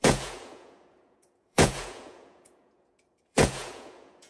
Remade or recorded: remade